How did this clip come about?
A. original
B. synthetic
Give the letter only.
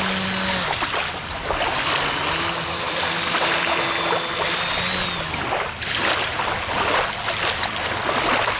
A